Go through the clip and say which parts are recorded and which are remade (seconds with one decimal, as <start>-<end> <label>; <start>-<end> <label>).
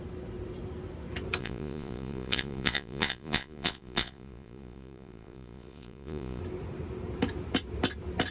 0.0-1.4 recorded; 1.4-6.4 remade; 6.4-8.3 recorded